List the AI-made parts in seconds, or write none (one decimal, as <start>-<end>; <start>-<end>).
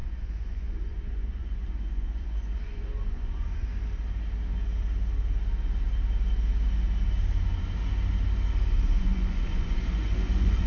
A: 0.0-3.7; 9.0-10.7